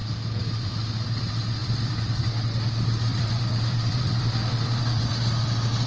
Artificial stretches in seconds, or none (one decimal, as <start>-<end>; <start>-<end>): 0.0-0.7; 1.6-2.2; 3.1-5.1